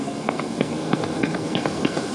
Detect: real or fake fake